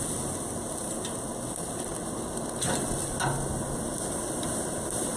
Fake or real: real